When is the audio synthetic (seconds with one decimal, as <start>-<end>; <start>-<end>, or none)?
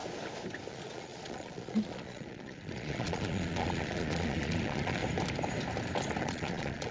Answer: 0.7-5.0; 6.2-6.9